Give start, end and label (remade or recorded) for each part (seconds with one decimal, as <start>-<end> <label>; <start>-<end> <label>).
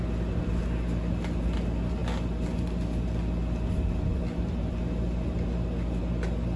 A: 0.0-6.6 recorded